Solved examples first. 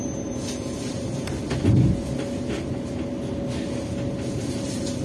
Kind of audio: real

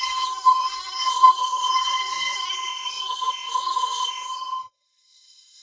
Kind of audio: fake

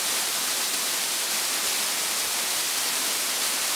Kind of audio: real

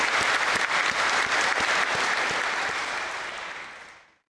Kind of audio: real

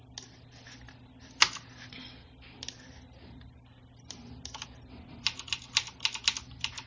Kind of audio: real